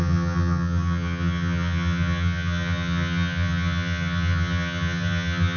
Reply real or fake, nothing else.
fake